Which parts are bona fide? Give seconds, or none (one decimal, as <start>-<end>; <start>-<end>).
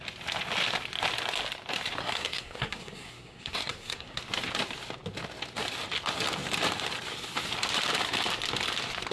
0.0-2.0; 4.2-9.1